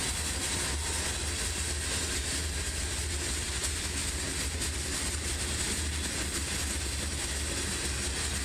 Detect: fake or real real